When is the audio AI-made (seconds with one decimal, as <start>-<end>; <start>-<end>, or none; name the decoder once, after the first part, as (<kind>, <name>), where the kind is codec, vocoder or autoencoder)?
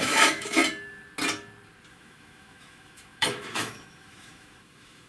0.0-0.6 (autoencoder, DAC-VAE); 1.9-5.1